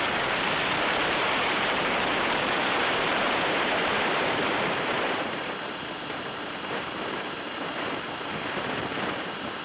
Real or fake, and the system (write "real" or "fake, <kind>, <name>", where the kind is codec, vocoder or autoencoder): fake, vocoder, BigVGAN v2